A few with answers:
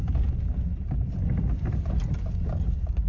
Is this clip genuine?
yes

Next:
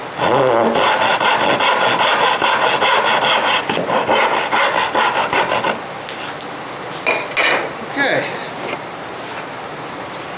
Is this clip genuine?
yes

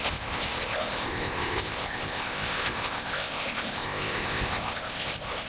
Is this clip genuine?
no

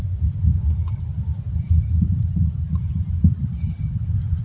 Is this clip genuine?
yes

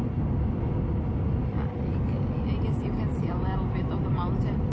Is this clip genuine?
yes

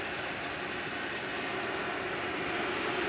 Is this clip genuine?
yes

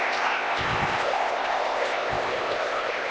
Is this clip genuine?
no